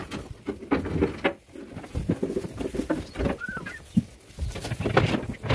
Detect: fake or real real